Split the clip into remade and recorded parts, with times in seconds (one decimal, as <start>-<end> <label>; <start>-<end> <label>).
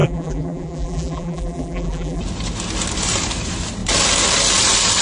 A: 0.0-2.2 remade; 2.2-5.0 recorded